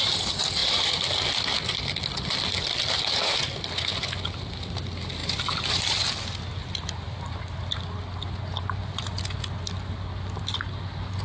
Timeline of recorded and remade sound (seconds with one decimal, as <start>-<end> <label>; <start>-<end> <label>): 0.0-11.2 recorded